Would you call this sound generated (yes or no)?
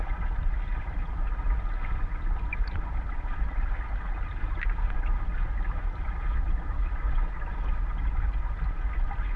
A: no